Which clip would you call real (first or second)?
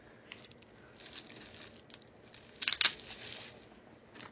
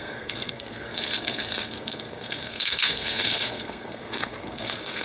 first